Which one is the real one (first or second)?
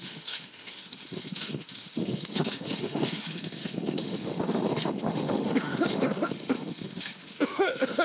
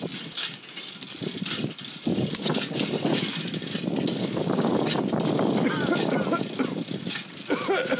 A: second